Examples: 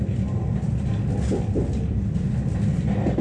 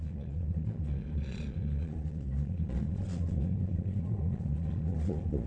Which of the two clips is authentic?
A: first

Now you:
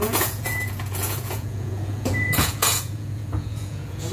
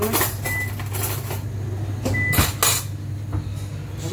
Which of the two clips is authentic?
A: second